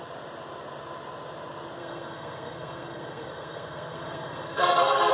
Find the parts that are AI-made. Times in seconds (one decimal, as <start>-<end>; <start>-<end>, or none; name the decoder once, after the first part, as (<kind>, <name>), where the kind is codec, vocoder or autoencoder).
1.8-5.1 (codec, SNAC)